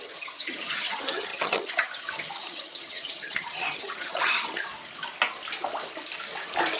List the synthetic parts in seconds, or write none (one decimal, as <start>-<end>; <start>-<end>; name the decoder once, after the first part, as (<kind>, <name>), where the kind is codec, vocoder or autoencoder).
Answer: 0.0-4.7 (vocoder, HiFi-GAN)

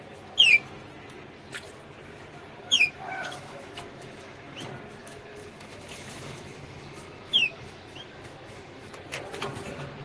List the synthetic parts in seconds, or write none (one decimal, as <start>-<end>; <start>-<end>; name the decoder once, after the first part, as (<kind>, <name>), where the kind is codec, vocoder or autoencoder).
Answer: 2.6-4.6 (autoencoder, DAC-VAE); 5.0-8.9

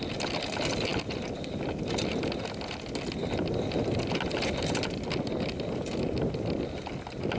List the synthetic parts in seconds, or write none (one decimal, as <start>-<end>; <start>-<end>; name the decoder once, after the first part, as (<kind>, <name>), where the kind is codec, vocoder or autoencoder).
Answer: none

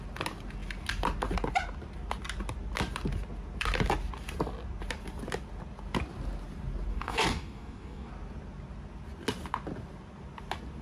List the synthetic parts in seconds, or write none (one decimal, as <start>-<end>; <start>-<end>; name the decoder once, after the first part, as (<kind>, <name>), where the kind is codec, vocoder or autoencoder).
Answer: 6.9-8.1 (codec, DAC)